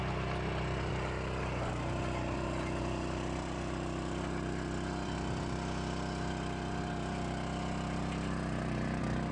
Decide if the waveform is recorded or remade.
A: recorded